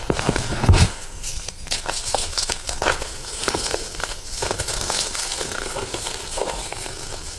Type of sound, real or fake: fake